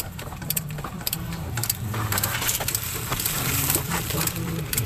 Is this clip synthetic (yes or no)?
yes